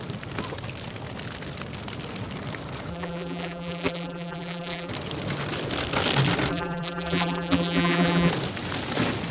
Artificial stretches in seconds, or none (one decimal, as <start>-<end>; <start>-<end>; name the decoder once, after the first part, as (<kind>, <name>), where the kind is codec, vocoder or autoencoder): 2.9-4.9 (vocoder, BigVGAN v2); 6.5-8.3